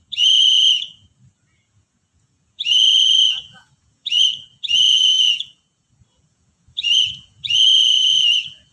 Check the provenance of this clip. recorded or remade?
remade